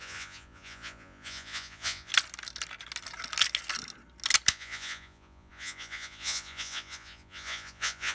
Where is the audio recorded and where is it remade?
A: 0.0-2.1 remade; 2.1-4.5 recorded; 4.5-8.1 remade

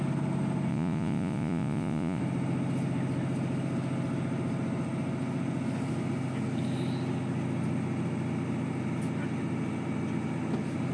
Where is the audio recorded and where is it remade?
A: 0.0-0.7 recorded; 0.7-2.2 remade; 2.2-10.9 recorded

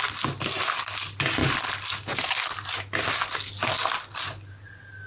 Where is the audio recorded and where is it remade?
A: 0.0-5.1 recorded

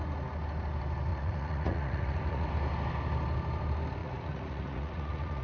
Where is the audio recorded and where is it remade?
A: 0.0-1.1 recorded; 1.1-2.5 remade; 2.5-4.0 recorded; 4.0-5.4 remade

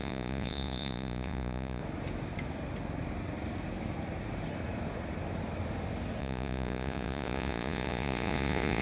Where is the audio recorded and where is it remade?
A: 0.0-1.8 remade; 1.8-6.2 recorded; 6.2-8.8 remade